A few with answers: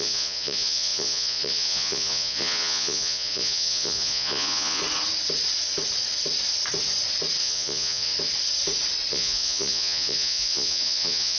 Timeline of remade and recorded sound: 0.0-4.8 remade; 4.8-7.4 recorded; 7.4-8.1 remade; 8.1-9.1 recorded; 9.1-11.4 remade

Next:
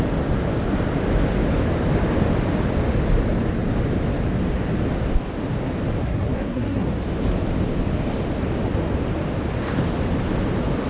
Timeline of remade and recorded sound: 0.0-6.0 recorded; 6.0-6.9 remade; 6.9-10.9 recorded

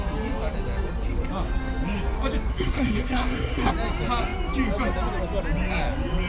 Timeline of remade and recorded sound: 0.0-2.5 recorded; 2.5-3.7 remade; 3.7-6.3 recorded

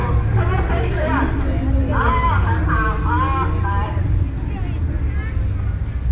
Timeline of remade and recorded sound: 0.0-6.1 recorded

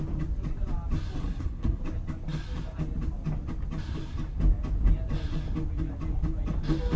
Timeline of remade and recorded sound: 0.0-1.2 recorded; 1.2-1.8 remade; 1.8-7.0 recorded

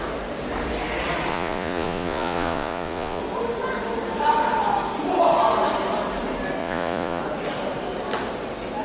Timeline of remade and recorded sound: 0.0-1.3 recorded; 1.3-3.2 remade; 3.2-6.6 recorded; 6.6-7.2 remade; 7.2-8.8 recorded

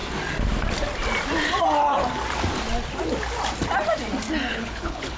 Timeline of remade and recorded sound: 0.0-4.5 recorded; 4.5-5.2 remade